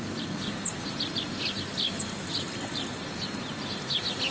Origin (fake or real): real